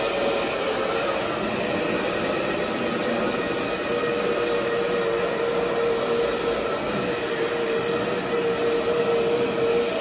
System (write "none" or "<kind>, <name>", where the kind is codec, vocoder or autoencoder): none